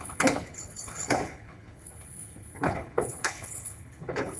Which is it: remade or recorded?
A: remade